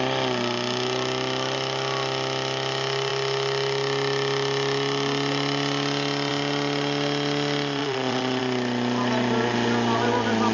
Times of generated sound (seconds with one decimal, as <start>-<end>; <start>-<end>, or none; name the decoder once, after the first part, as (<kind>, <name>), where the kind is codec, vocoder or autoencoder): 7.8-8.4 (vocoder, Vocos)